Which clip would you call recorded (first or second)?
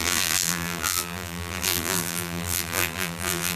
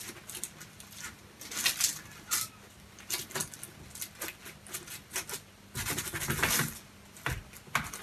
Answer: second